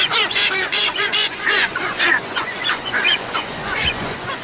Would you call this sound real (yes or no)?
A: no